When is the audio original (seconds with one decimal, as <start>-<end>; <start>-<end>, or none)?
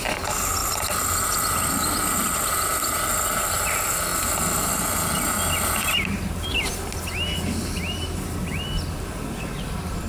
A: 0.0-10.1